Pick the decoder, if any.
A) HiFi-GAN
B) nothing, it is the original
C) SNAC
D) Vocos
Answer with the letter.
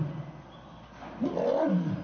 B